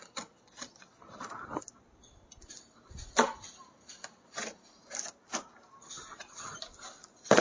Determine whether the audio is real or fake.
real